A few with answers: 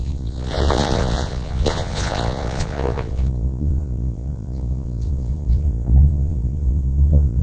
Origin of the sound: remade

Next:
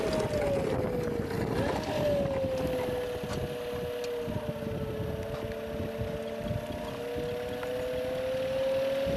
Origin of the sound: recorded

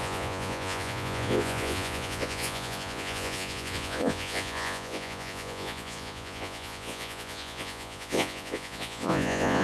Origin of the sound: remade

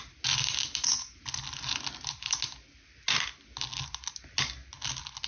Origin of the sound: recorded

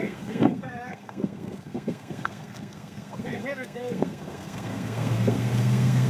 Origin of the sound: remade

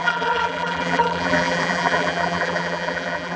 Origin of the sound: remade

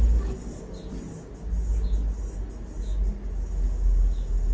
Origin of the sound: recorded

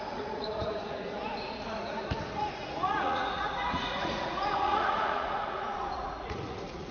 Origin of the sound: remade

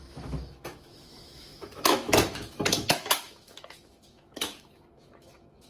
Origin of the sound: remade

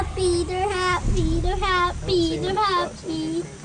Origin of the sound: recorded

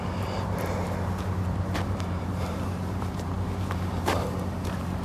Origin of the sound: remade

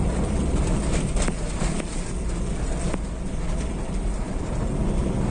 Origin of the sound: recorded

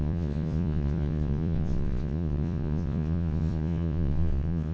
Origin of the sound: remade